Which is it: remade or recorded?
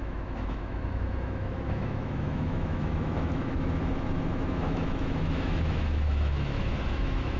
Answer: remade